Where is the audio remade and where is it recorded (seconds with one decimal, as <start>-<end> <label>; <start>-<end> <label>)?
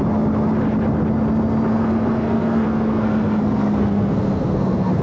0.0-1.7 recorded; 1.7-5.0 remade